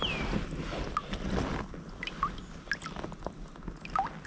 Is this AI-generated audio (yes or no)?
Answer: no